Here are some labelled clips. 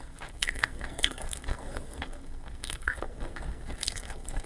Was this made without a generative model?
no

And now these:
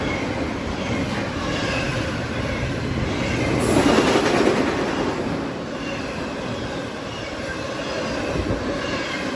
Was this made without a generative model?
yes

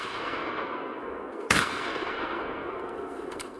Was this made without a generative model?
no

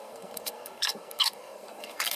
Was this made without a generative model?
no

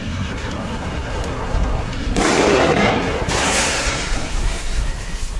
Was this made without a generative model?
no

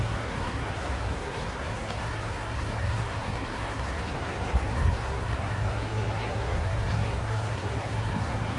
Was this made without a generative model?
no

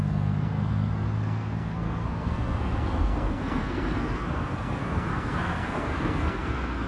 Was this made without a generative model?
no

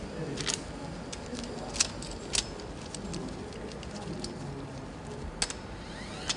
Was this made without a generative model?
yes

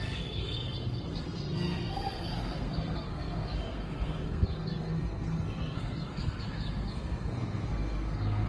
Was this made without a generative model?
no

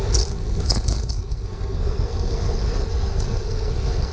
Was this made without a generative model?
no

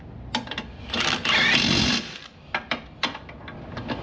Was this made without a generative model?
yes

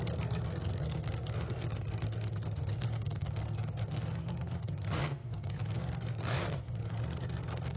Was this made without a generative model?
no